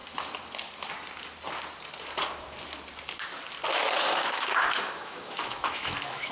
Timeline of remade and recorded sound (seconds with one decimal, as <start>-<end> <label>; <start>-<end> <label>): 0.0-3.7 recorded; 3.7-6.3 remade